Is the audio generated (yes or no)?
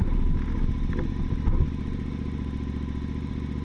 no